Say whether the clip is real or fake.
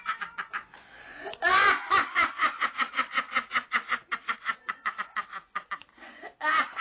fake